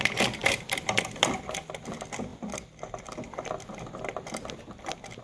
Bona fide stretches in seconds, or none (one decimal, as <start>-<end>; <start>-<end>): 0.0-0.4; 1.3-2.3; 3.7-5.2